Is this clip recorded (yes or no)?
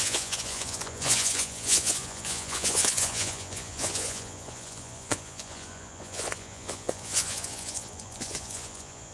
no